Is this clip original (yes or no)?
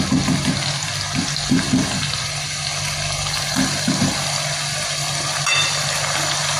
yes